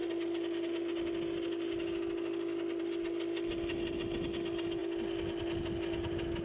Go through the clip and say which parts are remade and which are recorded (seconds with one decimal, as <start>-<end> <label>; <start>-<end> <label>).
0.0-6.4 recorded